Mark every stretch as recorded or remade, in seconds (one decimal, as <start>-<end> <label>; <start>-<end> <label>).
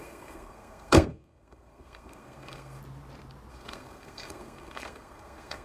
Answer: 0.0-2.8 remade; 2.8-3.5 recorded; 3.5-5.6 remade